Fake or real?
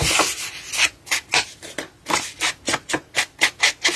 real